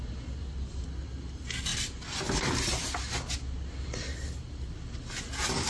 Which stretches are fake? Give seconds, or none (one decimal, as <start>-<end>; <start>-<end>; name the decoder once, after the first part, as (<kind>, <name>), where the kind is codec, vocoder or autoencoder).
none

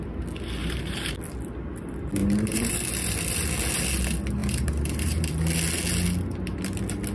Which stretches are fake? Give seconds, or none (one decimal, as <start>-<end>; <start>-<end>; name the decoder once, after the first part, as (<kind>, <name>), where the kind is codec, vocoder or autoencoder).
0.6-1.2 (vocoder, BigVGAN v2); 2.2-2.7; 4.4-5.3

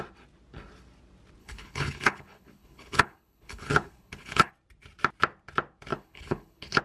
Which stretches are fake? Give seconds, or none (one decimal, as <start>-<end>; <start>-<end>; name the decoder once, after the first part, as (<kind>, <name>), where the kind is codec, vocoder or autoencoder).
1.4-4.5 (codec, HILCodec); 5.9-6.8

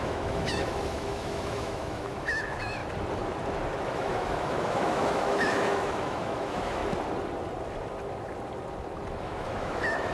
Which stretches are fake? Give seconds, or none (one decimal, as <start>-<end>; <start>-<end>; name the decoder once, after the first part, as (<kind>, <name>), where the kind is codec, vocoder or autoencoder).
0.0-2.8 (autoencoder, DAC-VAE); 3.9-6.8; 9.2-10.1

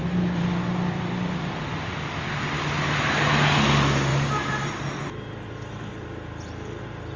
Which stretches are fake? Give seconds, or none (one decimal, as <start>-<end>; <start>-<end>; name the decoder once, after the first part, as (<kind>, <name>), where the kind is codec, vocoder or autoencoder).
4.1-4.7 (vocoder, BigVGAN v2)

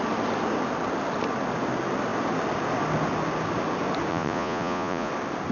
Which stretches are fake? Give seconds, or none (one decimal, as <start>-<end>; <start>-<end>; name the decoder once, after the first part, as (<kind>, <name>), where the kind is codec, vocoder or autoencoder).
4.1-5.1 (vocoder, Vocos)